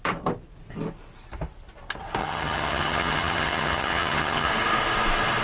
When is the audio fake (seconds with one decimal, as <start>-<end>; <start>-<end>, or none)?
2.2-4.5